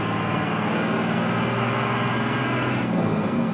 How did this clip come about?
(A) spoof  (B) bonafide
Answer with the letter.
A